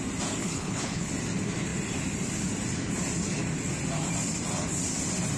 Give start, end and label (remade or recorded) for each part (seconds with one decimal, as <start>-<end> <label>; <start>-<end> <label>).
0.0-0.4 recorded; 0.4-1.1 remade; 1.1-5.4 recorded